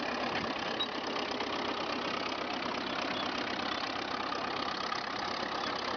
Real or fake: real